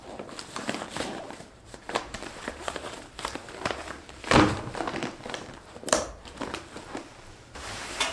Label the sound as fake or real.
fake